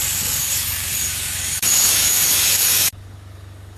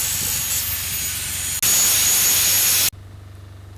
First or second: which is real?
second